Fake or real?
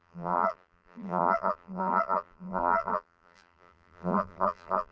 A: fake